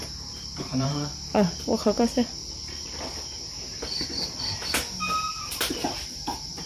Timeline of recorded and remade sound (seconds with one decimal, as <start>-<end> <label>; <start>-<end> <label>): 0.0-1.1 remade; 1.1-5.1 recorded; 5.1-6.7 remade